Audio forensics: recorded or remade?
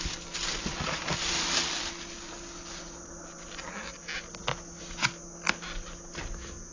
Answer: recorded